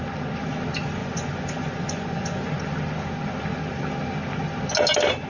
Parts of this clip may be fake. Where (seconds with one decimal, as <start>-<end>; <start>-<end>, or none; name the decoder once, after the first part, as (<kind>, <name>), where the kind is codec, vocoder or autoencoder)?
1.0-2.6 (vocoder, Vocos)

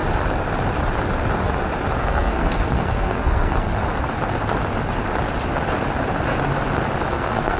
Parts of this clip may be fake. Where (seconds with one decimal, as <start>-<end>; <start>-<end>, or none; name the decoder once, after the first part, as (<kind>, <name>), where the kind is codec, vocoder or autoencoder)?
2.0-3.7 (codec, SNAC); 7.1-7.6

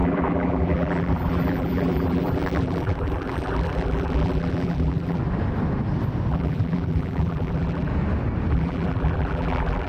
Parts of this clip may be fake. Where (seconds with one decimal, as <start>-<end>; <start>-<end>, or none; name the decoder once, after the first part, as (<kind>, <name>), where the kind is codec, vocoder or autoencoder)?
0.0-5.2 (vocoder, BigVGAN v2); 6.3-7.9; 8.5-9.9

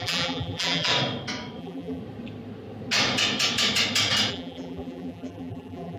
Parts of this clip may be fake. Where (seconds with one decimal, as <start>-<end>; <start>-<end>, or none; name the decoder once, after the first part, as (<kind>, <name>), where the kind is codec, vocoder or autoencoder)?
0.0-0.9 (vocoder, BigVGAN v2); 1.6-2.0; 4.3-6.0

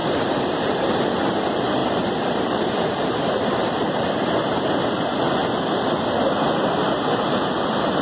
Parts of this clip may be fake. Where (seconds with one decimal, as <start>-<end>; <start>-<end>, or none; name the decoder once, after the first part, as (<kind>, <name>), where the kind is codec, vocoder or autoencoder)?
0.0-1.0 (vocoder, BigVGAN v2); 1.8-4.9; 5.4-6.0